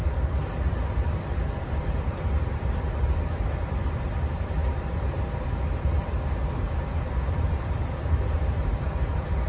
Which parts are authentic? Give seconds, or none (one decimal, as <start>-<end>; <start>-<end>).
0.0-0.6